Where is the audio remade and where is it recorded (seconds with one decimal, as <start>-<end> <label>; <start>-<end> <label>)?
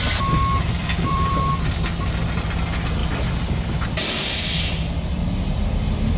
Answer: 0.0-0.8 recorded; 0.8-1.5 remade; 1.5-3.0 recorded; 3.0-3.9 remade; 3.9-6.2 recorded